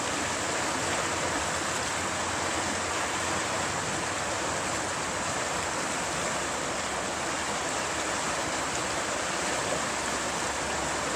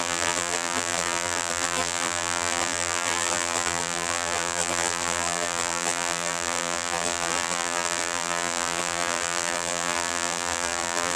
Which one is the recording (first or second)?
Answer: first